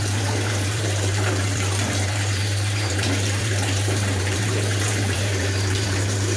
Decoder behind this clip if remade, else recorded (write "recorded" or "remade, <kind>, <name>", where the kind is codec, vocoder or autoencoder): remade, vocoder, BigVGAN v2